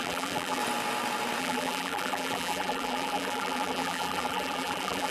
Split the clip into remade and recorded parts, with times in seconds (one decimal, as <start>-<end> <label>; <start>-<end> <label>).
0.0-0.6 remade; 0.6-1.4 recorded; 1.4-5.1 remade